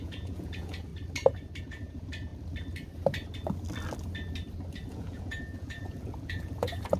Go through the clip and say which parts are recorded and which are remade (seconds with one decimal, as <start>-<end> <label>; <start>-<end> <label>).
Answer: 0.0-0.9 remade; 0.9-1.6 recorded; 1.6-2.3 remade; 2.3-4.9 recorded; 4.9-7.0 remade